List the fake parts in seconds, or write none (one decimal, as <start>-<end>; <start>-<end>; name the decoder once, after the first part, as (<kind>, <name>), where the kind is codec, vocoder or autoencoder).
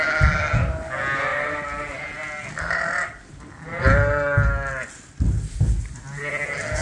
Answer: none